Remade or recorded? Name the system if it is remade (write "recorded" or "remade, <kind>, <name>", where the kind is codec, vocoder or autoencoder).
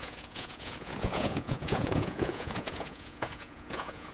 remade, vocoder, Vocos